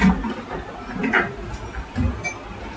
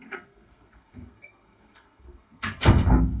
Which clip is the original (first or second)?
first